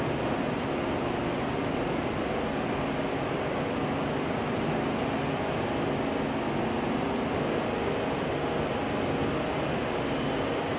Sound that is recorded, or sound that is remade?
recorded